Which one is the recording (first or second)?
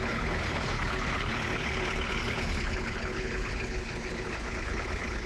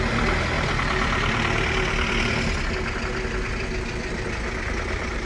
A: second